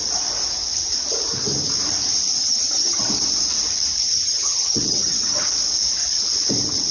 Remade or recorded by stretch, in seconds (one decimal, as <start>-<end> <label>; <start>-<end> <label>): 0.0-2.4 recorded; 2.4-3.0 remade; 3.0-4.0 recorded; 4.0-5.5 remade; 5.5-6.9 recorded